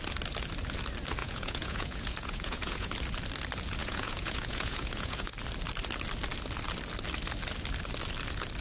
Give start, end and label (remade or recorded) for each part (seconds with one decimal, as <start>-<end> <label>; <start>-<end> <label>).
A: 0.0-1.2 recorded; 1.2-2.9 remade; 2.9-3.8 recorded; 3.8-5.3 remade; 5.3-8.6 recorded